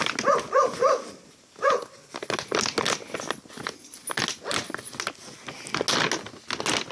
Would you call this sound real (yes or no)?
yes